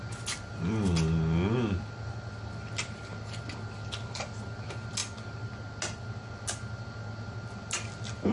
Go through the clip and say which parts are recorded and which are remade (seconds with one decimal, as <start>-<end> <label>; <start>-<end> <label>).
0.0-8.3 recorded